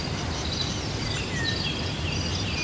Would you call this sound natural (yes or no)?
yes